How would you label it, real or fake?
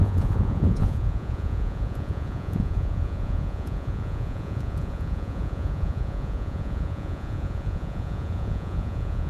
fake